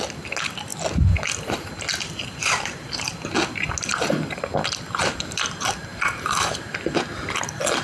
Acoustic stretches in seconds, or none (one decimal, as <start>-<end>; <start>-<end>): 0.0-2.4; 3.1-3.9; 4.4-5.9; 6.8-7.8